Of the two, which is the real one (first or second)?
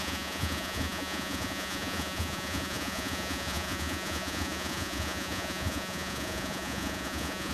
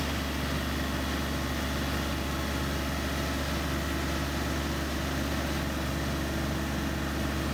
second